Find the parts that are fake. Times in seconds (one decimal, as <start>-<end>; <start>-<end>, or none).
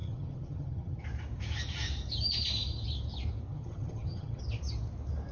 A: 0.0-1.0; 3.5-4.4